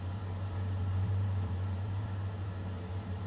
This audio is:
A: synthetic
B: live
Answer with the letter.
A